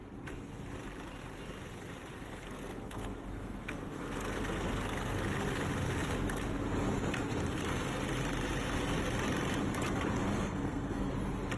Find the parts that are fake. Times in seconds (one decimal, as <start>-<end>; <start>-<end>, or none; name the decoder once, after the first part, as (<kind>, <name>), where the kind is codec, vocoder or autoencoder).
2.3-5.2 (codec, SNAC); 10.2-11.1